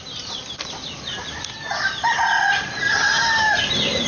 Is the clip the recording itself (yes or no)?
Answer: yes